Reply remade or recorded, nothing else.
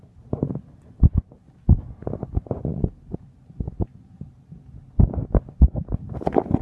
recorded